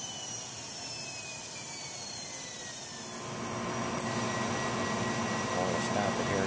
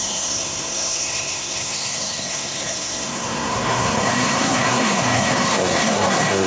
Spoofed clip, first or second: second